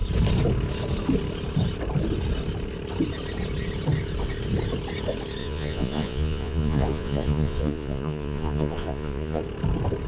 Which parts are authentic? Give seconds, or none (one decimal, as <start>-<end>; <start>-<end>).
0.0-5.4; 9.4-10.1